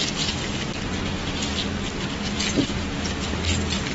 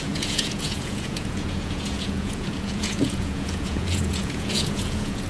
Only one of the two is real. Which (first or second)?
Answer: first